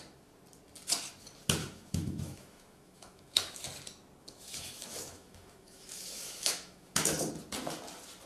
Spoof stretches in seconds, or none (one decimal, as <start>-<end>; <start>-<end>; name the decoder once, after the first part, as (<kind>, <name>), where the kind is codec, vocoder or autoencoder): 1.6-3.6 (autoencoder, DAC-VAE); 4.2-7.3